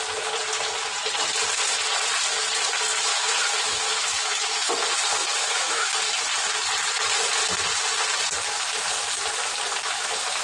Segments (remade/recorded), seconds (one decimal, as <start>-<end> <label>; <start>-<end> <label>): 0.0-3.1 recorded; 3.1-4.7 remade; 4.7-5.2 recorded; 5.2-5.9 remade; 5.9-10.4 recorded